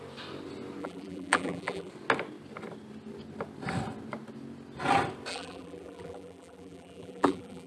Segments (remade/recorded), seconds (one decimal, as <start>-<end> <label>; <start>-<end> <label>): 0.0-0.8 recorded; 0.8-1.9 remade; 1.9-5.3 recorded; 5.3-7.7 remade